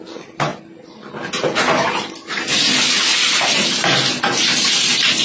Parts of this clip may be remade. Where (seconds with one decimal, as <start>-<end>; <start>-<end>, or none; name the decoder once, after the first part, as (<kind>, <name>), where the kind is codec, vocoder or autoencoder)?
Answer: none

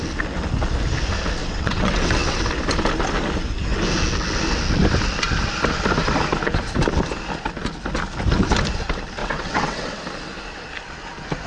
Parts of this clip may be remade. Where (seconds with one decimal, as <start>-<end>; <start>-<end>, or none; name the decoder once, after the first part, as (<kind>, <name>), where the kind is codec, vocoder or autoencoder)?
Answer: 1.4-2.4 (vocoder, WaveNeXt); 9.2-10.0

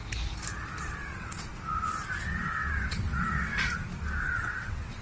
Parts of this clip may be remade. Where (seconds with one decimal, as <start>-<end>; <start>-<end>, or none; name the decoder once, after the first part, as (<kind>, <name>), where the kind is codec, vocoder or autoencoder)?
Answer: 0.8-1.5 (vocoder, WaveNeXt); 2.5-3.5; 4.2-5.0

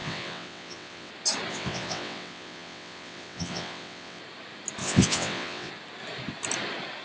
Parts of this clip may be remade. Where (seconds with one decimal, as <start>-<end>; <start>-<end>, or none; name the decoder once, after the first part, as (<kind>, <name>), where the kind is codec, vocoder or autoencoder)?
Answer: 0.0-1.1 (vocoder, WaveNeXt); 1.5-4.2; 4.8-5.7

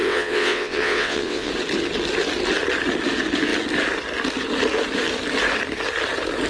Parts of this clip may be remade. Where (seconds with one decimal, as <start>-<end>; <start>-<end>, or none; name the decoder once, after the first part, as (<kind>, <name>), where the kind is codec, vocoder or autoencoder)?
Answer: 0.0-1.5 (vocoder, WaveNeXt)

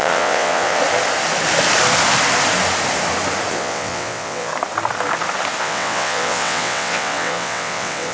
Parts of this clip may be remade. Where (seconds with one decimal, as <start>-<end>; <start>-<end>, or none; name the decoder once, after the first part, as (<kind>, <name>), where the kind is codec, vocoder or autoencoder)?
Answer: 0.0-0.8 (vocoder, WaveNeXt); 3.5-4.5; 5.6-8.1

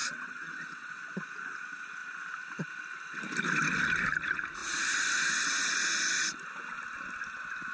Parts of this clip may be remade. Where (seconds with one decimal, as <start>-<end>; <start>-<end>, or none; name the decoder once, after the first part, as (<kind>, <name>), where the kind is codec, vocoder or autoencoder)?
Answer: 0.0-1.0 (vocoder, WaveNeXt)